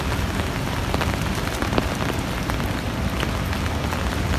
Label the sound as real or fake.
fake